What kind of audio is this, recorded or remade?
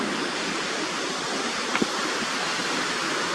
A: recorded